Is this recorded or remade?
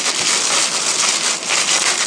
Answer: recorded